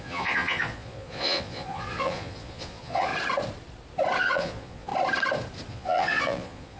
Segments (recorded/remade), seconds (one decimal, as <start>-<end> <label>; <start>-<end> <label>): 0.0-3.1 remade; 3.1-4.2 recorded; 4.2-4.9 remade; 4.9-5.7 recorded; 5.7-6.8 remade